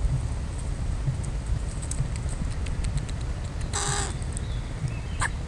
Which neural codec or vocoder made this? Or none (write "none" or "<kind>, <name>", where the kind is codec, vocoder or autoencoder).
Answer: none